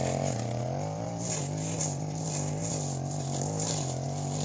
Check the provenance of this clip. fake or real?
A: real